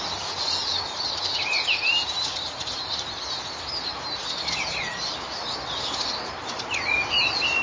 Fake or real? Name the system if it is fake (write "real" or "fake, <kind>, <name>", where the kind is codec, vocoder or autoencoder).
real